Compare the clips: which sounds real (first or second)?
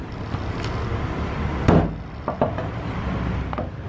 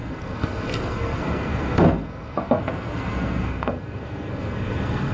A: first